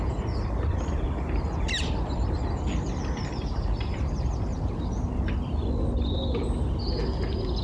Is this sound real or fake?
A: real